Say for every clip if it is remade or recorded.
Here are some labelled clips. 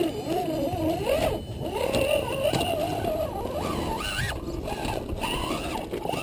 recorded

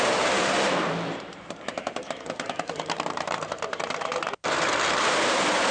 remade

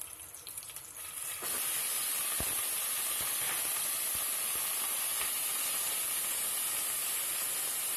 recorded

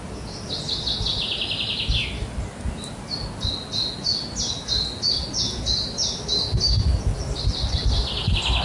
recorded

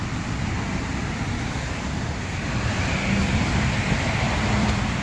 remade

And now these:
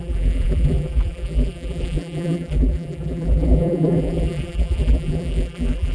remade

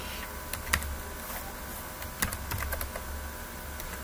recorded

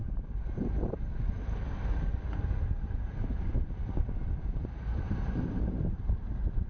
remade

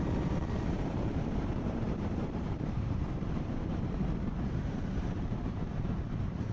remade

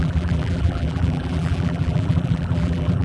remade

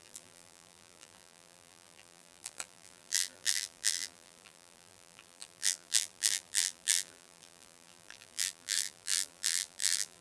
remade